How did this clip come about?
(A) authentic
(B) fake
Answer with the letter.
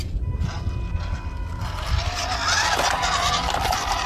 A